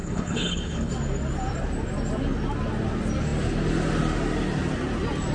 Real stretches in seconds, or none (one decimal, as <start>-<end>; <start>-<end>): 0.9-5.3